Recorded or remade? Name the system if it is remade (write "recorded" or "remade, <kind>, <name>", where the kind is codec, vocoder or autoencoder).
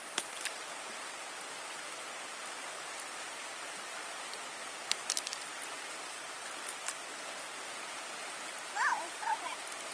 recorded